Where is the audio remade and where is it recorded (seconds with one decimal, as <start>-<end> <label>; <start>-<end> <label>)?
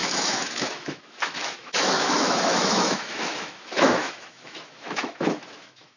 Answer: 0.0-6.0 remade